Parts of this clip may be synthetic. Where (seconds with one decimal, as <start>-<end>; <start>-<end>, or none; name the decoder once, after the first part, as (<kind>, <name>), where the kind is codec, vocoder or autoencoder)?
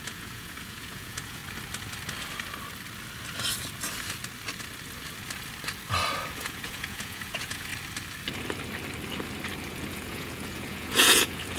0.0-1.4 (vocoder, Vocos); 6.4-7.7; 9.7-11.6